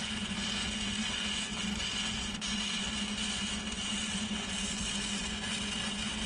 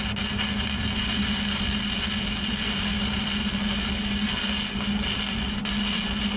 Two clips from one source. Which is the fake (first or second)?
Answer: first